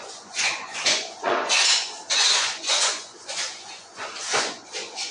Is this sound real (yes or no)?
no